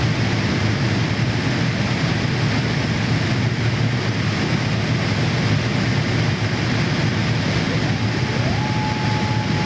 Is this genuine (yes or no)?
yes